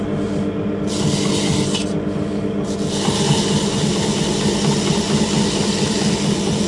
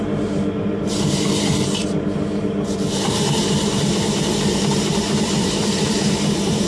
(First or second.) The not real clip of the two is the second